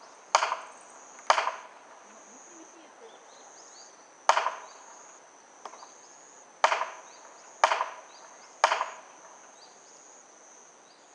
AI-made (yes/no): no